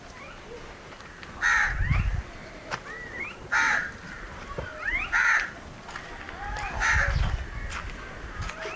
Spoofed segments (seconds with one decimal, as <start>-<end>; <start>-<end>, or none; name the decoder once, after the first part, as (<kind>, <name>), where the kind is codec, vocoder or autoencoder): 2.4-5.5 (vocoder, BigVGAN v2)